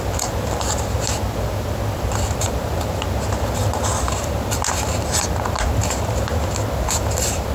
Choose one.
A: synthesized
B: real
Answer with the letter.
B